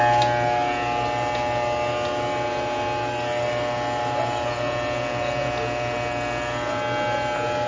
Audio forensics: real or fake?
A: real